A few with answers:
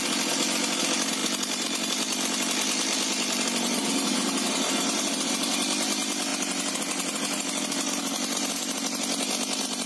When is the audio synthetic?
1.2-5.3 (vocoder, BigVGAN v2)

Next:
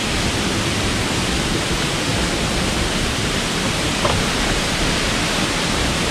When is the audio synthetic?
0.0-2.1 (vocoder, BigVGAN v2); 3.1-6.1

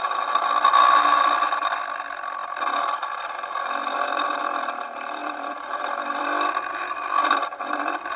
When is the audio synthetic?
2.4-3.3 (vocoder, BigVGAN v2); 5.2-6.2; 6.8-7.6

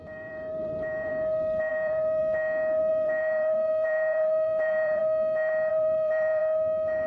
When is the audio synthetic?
0.0-1.1 (vocoder, BigVGAN v2); 1.7-2.2; 2.9-5.0; 5.7-6.4

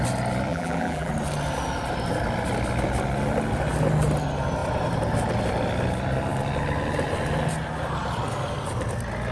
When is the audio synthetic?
0.5-1.1 (vocoder, BigVGAN v2)